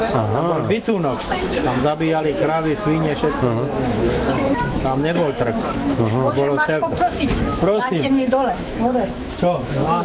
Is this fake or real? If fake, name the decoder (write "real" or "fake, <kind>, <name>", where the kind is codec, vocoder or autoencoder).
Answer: fake, autoencoder, DAC-VAE